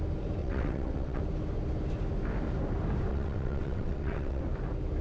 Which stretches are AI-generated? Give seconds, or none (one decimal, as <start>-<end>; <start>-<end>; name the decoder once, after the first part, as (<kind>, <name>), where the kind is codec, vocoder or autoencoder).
0.4-1.2 (vocoder, WaveNeXt); 3.1-4.4